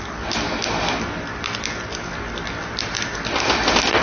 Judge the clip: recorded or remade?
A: recorded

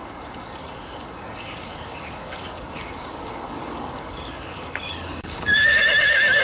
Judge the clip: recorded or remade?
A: remade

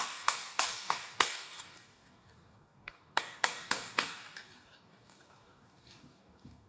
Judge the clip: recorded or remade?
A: remade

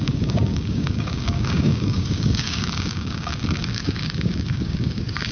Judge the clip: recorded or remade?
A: remade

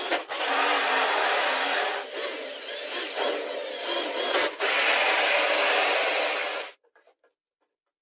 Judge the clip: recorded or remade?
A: recorded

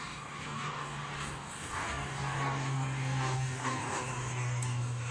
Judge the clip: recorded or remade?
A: remade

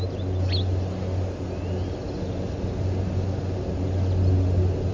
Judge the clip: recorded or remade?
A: recorded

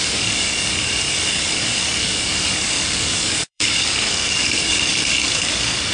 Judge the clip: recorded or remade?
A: remade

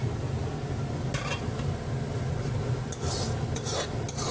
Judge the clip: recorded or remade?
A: recorded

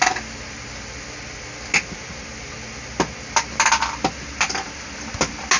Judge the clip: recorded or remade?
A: recorded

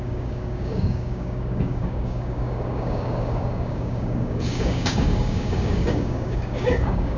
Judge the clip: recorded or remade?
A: remade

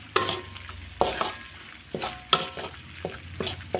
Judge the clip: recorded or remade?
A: recorded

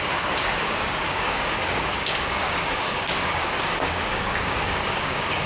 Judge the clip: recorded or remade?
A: remade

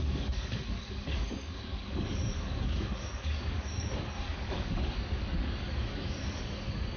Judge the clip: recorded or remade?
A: remade